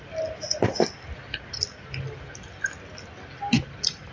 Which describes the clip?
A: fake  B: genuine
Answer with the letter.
B